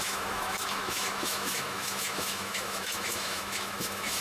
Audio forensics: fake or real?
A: fake